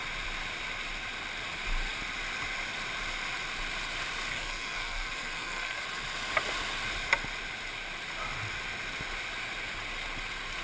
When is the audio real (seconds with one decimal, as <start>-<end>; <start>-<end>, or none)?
0.0-4.3; 5.8-10.6